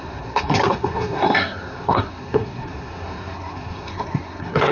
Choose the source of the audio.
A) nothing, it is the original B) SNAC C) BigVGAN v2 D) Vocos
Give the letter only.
B